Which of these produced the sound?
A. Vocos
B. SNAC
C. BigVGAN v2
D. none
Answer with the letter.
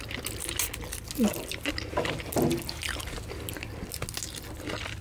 D